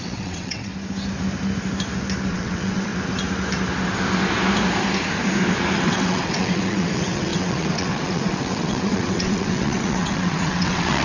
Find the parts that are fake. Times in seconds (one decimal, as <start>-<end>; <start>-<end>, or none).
0.0-0.7; 2.3-2.9; 5.8-11.0